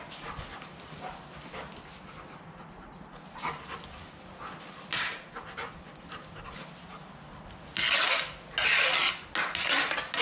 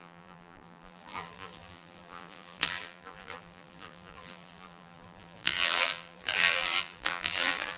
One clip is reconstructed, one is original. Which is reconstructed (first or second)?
second